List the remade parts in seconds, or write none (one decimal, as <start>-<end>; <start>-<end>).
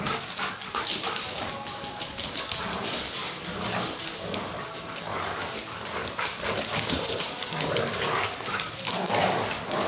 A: 0.0-3.2; 4.6-9.9